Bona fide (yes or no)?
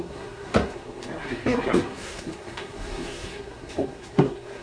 no